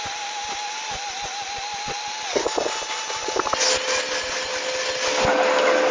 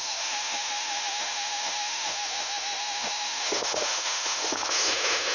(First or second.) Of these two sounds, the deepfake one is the second